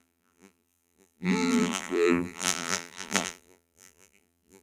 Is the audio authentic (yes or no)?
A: no